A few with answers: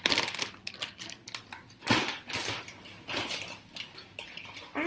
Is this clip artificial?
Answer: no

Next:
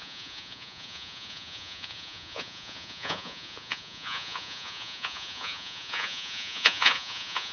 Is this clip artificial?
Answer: yes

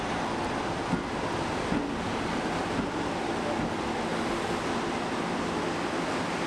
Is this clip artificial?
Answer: no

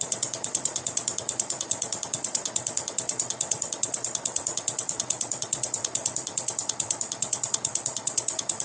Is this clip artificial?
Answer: yes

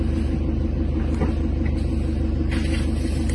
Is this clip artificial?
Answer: no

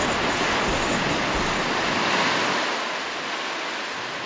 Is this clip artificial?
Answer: no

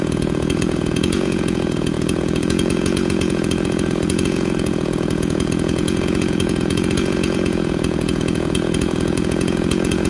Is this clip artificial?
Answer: yes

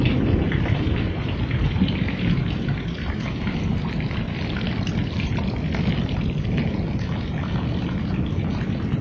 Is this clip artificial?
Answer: no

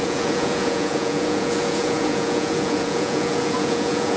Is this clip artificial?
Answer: yes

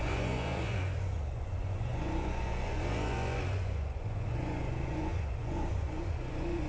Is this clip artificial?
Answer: yes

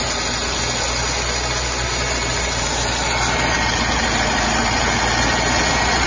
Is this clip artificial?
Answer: no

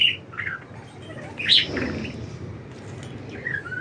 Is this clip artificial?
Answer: no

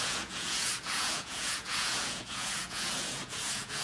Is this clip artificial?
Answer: yes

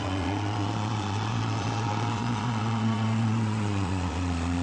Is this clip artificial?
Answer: yes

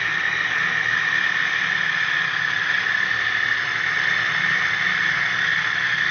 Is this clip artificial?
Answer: no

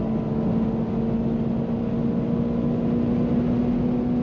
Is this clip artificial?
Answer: no